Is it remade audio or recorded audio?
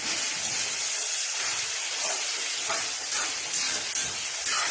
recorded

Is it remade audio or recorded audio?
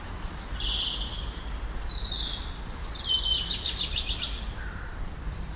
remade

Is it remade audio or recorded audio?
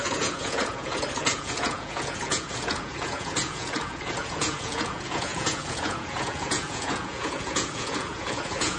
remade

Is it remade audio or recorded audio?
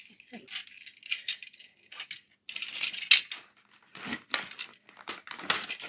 recorded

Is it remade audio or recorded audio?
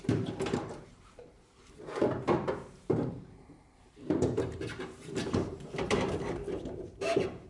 remade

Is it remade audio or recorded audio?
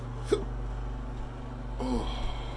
recorded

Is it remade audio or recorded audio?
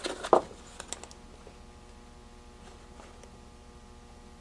recorded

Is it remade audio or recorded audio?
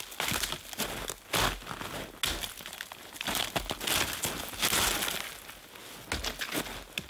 recorded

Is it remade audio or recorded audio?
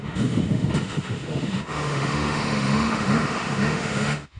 remade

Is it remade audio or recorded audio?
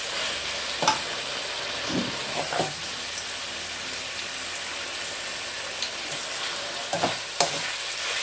recorded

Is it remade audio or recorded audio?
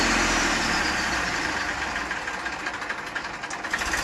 recorded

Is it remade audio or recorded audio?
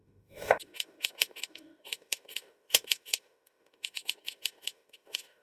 remade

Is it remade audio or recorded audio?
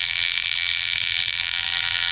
remade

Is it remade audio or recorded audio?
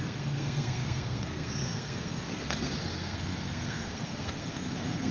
remade